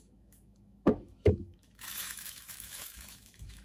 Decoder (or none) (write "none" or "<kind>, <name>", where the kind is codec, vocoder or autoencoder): autoencoder, DAC-VAE